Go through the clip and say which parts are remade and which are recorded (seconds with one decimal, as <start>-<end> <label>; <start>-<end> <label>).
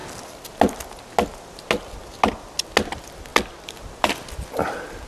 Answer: 0.0-5.1 recorded